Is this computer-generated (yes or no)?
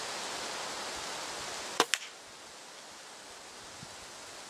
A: no